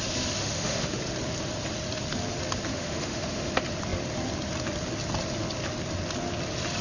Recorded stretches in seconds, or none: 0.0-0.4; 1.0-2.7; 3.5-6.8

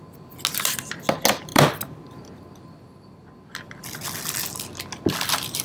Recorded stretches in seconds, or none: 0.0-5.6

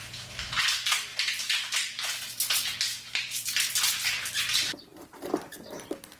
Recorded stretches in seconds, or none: 0.6-6.2

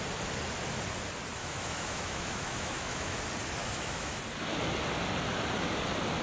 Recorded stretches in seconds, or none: 0.0-1.4; 3.2-3.6; 4.2-6.2

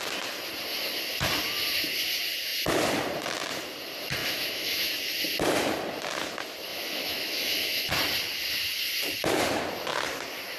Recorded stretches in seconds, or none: 0.0-4.2; 4.9-6.7; 7.9-10.6